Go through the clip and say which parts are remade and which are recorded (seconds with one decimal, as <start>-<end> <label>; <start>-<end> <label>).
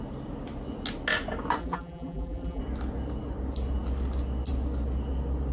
0.0-1.6 recorded; 1.6-2.6 remade; 2.6-5.5 recorded